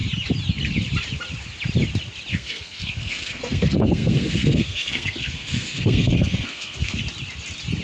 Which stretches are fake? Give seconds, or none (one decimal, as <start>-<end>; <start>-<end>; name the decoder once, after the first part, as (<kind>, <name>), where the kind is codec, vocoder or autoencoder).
2.3-7.0 (codec, SNAC)